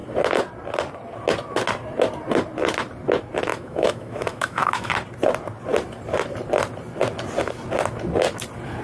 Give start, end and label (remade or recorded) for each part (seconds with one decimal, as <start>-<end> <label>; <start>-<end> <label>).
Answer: 0.0-3.5 recorded; 3.5-4.9 remade; 4.9-8.8 recorded